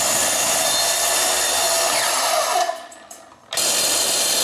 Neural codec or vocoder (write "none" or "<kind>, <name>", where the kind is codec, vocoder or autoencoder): none